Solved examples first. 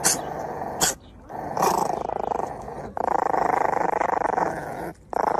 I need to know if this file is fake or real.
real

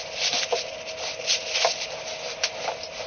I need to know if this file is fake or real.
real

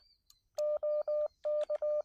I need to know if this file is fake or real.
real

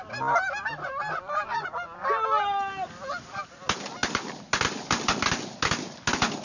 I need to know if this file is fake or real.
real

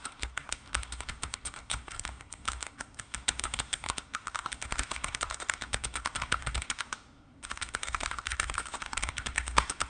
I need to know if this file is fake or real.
fake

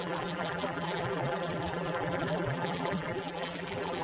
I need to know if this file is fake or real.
fake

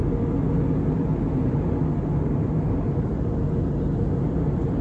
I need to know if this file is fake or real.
real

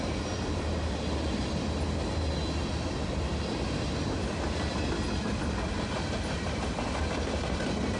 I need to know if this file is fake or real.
real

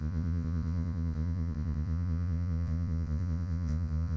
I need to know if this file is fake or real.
fake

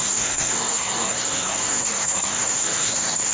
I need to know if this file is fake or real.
fake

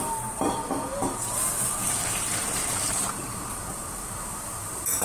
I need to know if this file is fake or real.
fake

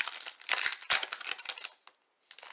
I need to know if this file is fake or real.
real